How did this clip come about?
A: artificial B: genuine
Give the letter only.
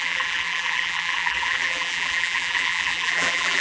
A